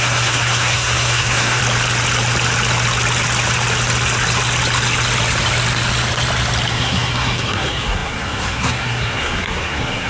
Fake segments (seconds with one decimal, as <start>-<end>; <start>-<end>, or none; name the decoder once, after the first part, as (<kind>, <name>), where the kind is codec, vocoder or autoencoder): 0.0-1.6 (codec, SNAC); 6.7-10.1